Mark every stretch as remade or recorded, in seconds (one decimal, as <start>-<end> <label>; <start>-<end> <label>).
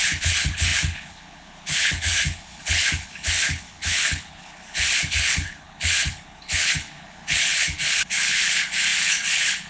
0.0-9.7 remade